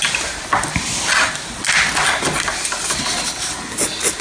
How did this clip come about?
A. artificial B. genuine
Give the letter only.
B